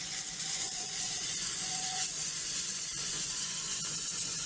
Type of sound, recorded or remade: remade